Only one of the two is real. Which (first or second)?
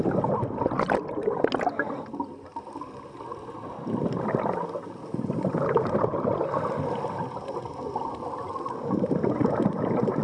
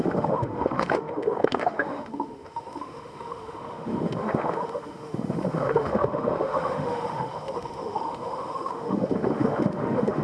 first